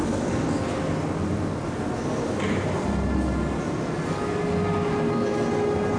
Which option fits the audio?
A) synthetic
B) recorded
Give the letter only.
B